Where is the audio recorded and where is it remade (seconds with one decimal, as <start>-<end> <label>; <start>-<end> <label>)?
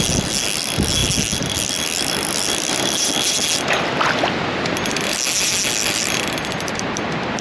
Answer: 0.0-7.4 recorded